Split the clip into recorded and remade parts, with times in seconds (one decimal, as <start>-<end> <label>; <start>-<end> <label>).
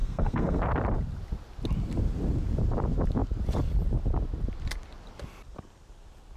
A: 0.0-0.6 remade; 0.6-6.4 recorded